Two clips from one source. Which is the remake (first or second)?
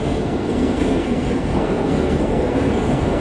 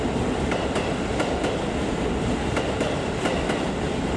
first